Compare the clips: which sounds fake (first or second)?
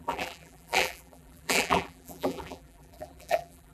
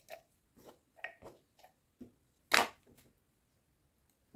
first